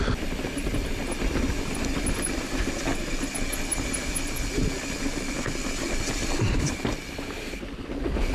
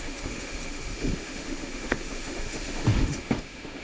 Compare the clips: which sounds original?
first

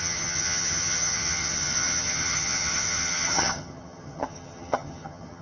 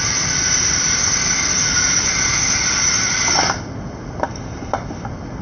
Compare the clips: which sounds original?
second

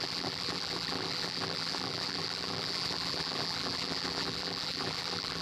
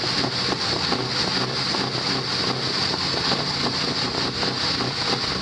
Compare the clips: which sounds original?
second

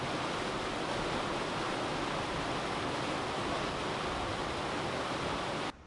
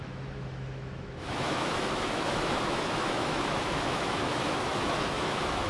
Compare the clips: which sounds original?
first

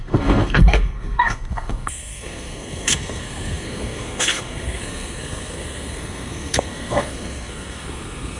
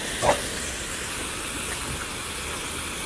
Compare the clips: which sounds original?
second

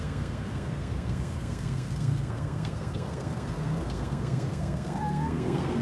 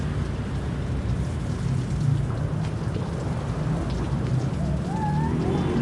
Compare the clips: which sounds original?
second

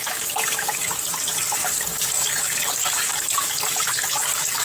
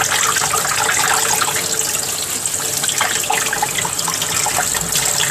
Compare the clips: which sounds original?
second